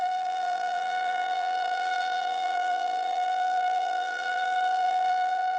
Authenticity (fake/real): fake